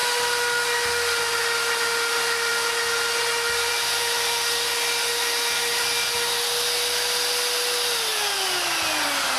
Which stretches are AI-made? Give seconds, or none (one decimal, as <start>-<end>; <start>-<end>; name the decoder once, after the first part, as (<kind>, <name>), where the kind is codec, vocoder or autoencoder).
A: none